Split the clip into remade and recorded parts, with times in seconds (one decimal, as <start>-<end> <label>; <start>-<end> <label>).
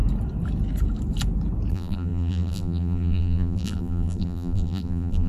0.0-1.7 recorded; 1.7-5.3 remade